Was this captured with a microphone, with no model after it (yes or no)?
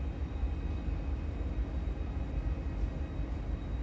yes